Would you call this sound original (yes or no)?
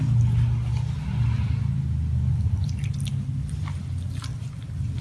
yes